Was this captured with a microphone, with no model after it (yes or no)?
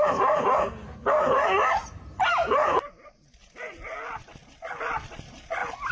yes